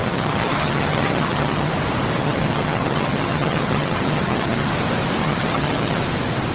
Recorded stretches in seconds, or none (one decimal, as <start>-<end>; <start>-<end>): 1.7-2.2; 4.7-5.2; 6.0-6.5